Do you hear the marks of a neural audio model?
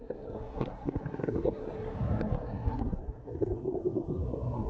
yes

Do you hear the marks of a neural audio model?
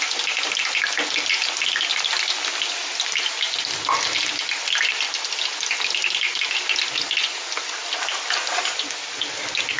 no